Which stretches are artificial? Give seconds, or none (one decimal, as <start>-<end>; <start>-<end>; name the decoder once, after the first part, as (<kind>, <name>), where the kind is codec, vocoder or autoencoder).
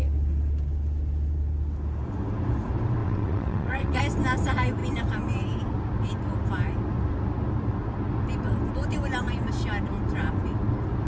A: 3.0-4.0 (vocoder, WaveNeXt)